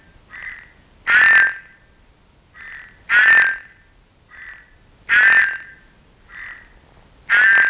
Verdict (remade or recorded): remade